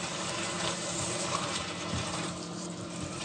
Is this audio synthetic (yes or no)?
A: yes